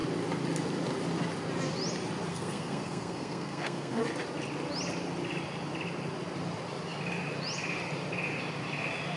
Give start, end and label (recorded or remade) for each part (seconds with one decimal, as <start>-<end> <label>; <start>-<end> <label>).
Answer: 0.0-2.3 recorded; 2.3-4.0 remade; 4.0-9.2 recorded